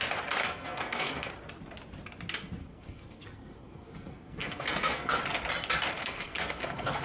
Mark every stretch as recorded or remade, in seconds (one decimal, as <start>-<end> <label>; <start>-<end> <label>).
0.0-0.4 recorded; 0.4-1.3 remade; 1.3-2.6 recorded; 2.6-5.2 remade; 5.2-6.0 recorded; 6.0-7.0 remade

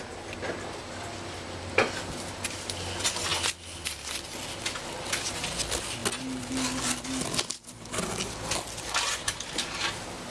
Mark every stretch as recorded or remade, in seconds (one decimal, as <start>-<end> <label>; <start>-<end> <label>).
0.0-10.3 recorded

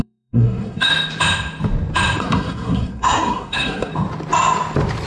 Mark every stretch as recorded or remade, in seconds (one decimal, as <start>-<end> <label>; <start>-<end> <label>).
0.0-0.9 remade; 0.9-2.2 recorded; 2.2-3.9 remade; 3.9-5.1 recorded

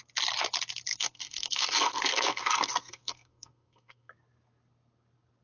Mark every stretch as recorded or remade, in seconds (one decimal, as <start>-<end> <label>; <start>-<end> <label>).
0.0-0.9 recorded; 0.9-4.1 remade; 4.1-5.4 recorded

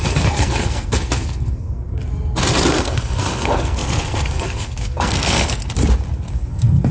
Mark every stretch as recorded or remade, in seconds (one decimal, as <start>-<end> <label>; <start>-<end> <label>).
0.0-2.0 remade; 2.0-2.7 recorded; 2.7-5.6 remade; 5.6-6.3 recorded; 6.3-6.9 remade

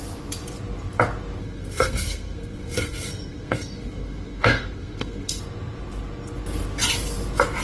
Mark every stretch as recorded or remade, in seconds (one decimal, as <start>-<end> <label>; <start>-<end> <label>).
0.0-1.4 recorded; 1.4-5.4 remade; 5.4-7.6 recorded

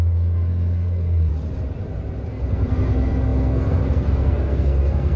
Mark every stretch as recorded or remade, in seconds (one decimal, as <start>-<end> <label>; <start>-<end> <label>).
0.0-1.3 remade; 1.3-2.3 recorded; 2.3-5.2 remade